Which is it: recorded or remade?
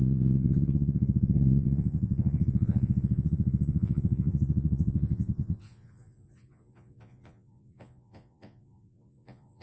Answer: remade